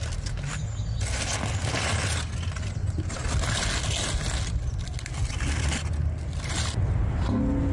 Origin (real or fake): real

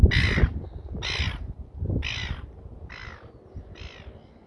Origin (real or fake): real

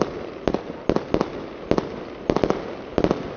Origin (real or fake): real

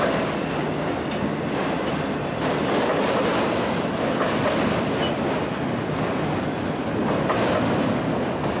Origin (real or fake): real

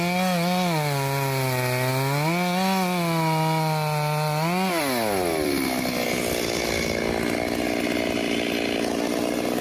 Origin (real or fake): real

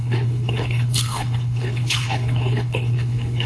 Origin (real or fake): fake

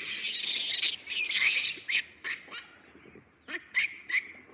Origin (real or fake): real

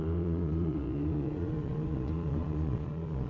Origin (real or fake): fake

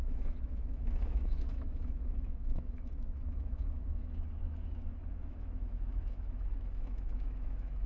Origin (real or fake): fake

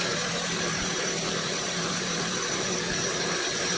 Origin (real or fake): fake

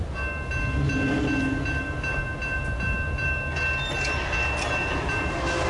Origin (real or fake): real